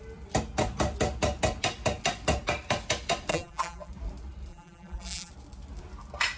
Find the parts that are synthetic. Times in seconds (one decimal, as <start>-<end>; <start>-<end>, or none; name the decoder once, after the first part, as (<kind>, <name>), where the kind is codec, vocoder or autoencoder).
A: 3.3-3.9 (vocoder, BigVGAN v2); 4.5-5.3